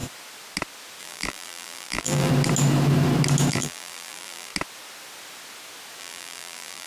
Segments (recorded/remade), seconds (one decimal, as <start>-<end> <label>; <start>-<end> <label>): 0.0-1.0 recorded; 1.0-2.3 remade; 2.3-3.5 recorded; 3.5-4.5 remade; 4.5-6.0 recorded; 6.0-6.9 remade